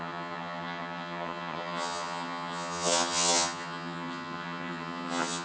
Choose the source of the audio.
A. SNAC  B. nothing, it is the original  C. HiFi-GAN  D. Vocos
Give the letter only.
C